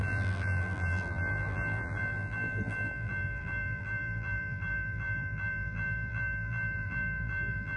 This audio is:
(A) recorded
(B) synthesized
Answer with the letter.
B